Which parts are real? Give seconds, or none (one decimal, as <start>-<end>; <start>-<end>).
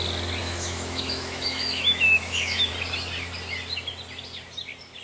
0.0-0.4; 2.7-5.0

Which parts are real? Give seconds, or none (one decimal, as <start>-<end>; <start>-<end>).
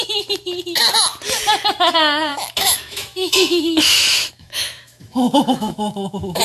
0.0-2.3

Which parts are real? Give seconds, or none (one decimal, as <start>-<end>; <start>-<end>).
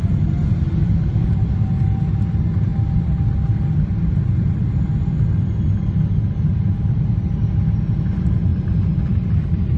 0.0-9.8